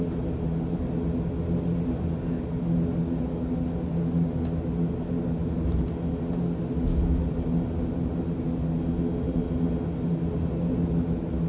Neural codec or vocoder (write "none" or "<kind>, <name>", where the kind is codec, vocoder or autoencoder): none